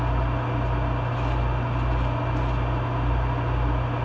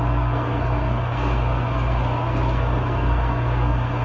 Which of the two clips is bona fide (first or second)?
first